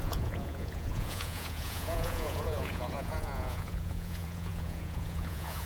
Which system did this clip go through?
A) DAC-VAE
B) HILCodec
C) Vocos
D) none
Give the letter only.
C